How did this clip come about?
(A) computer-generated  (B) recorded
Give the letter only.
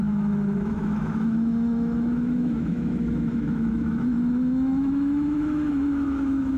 A